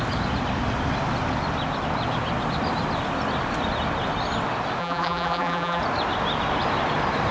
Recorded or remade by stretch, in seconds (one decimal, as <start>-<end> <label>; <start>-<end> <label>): 0.0-4.8 recorded; 4.8-5.8 remade; 5.8-7.3 recorded